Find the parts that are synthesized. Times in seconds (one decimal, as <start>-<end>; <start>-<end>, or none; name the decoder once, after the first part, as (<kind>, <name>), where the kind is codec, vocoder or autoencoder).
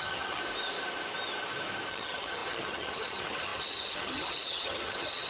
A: 0.0-0.4 (vocoder, HiFi-GAN); 1.9-5.3